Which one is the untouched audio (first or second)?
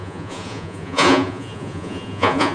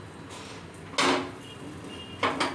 second